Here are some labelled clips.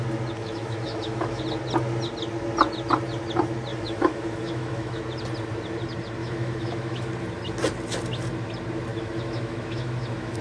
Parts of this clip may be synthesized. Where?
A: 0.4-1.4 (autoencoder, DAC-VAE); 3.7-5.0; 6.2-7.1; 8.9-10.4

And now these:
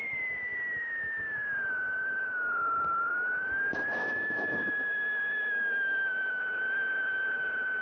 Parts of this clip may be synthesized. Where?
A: 4.0-6.4 (autoencoder, DAC-VAE)

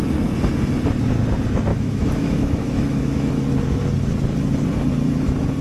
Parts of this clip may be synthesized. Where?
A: 1.7-3.3 (autoencoder, DAC-VAE)

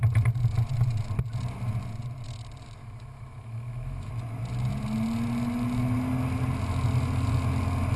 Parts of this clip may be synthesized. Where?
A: 2.8-4.1 (autoencoder, DAC-VAE)

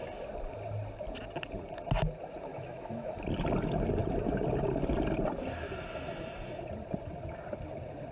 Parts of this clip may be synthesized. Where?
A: 2.5-3.2 (autoencoder, DAC-VAE)

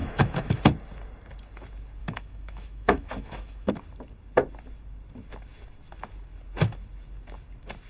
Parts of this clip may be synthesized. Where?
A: 0.0-0.6 (autoencoder, DAC-VAE); 2.0-3.7